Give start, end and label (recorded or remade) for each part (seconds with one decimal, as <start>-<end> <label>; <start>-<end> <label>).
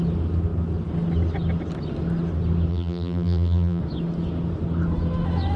0.0-2.7 recorded; 2.7-3.8 remade; 3.8-5.6 recorded